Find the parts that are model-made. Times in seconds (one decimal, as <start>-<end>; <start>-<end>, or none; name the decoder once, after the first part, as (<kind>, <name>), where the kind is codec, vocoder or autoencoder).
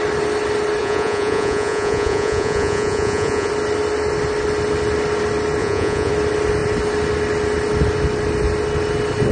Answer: 0.8-3.5 (vocoder, Vocos); 5.6-6.1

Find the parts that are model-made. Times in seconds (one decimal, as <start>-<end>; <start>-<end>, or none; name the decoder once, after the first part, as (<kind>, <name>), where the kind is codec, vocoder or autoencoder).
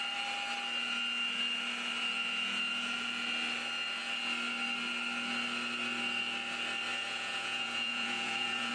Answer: 6.9-8.7 (vocoder, Vocos)